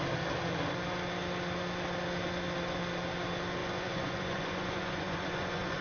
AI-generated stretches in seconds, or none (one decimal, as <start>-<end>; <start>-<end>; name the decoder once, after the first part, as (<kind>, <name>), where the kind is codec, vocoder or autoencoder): 3.6-5.8 (vocoder, Vocos)